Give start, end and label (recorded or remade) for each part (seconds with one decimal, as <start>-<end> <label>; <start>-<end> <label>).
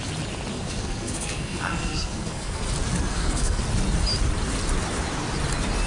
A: 0.0-0.5 recorded; 0.5-2.6 remade; 2.6-3.1 recorded; 3.1-3.6 remade; 3.6-5.9 recorded